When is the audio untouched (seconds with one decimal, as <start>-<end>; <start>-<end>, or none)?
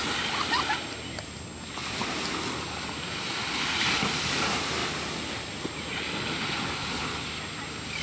0.0-8.0